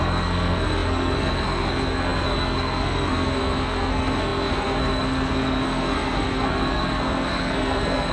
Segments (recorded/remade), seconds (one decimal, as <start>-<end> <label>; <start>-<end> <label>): 0.0-8.1 remade